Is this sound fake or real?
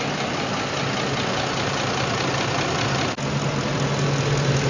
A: real